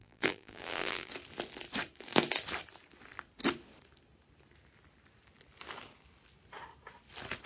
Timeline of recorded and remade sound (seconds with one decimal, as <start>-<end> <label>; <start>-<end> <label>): 0.0-1.1 remade; 1.1-7.5 recorded